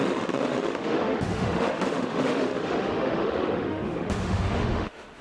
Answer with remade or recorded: remade